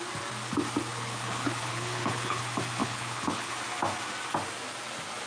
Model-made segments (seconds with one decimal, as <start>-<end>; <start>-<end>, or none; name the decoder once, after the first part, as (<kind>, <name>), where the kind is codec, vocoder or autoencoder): 0.9-2.4 (codec, HILCodec); 2.8-3.5